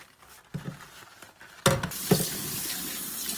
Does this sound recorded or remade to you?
recorded